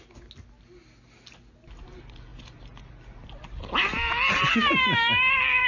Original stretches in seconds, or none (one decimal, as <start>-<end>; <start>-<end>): 0.0-5.7